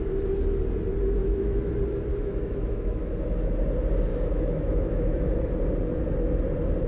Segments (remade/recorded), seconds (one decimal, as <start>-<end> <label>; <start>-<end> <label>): 0.0-1.2 recorded; 1.2-1.7 remade; 1.7-2.1 recorded; 2.1-3.1 remade; 3.1-4.1 recorded; 4.1-5.3 remade; 5.3-6.9 recorded